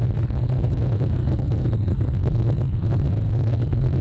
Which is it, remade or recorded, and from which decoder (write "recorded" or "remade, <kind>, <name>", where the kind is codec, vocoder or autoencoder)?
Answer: remade, codec, SNAC